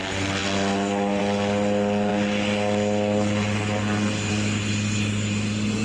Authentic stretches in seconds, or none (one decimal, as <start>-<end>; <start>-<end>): 0.0-5.8